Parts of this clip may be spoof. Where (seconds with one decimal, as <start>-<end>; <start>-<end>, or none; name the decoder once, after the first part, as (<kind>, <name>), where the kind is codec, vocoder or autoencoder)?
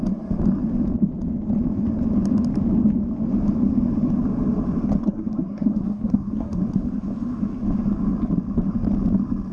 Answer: 5.0-6.6 (codec, SNAC)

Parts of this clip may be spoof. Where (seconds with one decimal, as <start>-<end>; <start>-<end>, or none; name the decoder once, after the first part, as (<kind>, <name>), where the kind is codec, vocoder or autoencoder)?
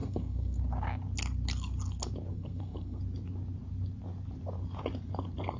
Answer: 0.0-0.6 (codec, SNAC); 2.3-3.0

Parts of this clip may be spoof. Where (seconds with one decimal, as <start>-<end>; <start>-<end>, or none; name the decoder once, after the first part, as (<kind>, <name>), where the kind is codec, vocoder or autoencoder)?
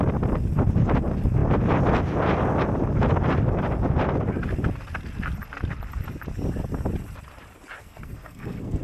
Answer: 7.8-8.8 (codec, SNAC)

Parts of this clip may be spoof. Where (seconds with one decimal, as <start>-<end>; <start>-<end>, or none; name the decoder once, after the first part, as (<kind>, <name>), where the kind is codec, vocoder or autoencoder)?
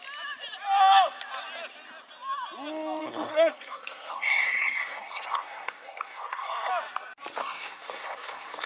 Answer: 3.0-6.7 (codec, SNAC); 7.4-8.7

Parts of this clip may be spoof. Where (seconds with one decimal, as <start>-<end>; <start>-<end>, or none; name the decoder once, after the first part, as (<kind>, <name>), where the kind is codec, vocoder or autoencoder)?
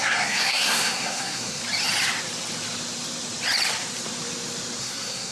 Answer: 0.0-1.6 (codec, SNAC); 4.8-5.3